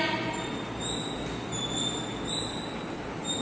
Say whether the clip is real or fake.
real